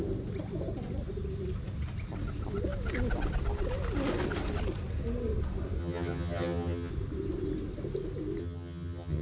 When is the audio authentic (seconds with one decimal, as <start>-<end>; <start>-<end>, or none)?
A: 0.0-5.8; 6.9-8.4